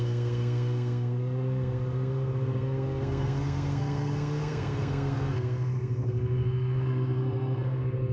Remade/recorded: remade